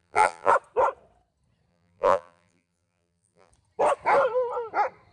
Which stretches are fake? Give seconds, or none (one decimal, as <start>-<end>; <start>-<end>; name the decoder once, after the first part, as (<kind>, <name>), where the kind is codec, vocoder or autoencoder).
0.0-0.5 (vocoder, BigVGAN v2); 1.7-3.5